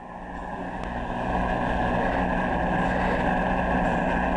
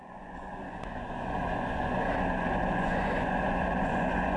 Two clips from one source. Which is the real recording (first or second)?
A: first